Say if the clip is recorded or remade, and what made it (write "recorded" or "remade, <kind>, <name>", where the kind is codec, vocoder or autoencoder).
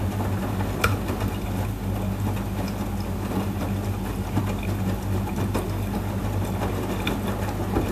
recorded